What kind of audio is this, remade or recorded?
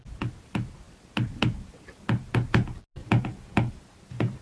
recorded